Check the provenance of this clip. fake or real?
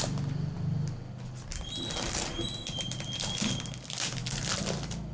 real